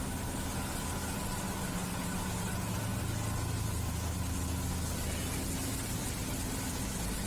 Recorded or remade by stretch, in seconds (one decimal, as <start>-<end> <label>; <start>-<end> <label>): 0.0-7.3 recorded